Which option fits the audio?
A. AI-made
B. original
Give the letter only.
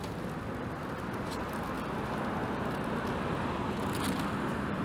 B